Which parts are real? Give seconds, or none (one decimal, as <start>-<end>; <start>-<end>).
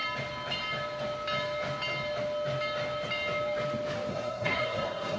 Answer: 0.0-4.1